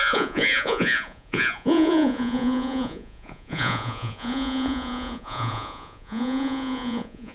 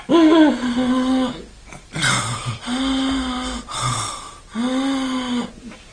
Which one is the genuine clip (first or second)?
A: second